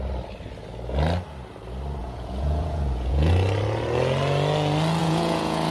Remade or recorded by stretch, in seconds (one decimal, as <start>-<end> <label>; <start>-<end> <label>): 0.0-2.0 recorded; 2.0-3.3 remade; 3.3-5.0 recorded; 5.0-5.7 remade